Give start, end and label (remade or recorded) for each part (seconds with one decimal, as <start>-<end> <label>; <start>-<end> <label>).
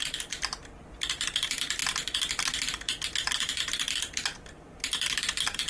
0.0-5.7 recorded